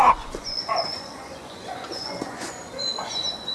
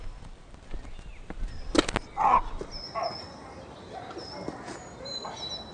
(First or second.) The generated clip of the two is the first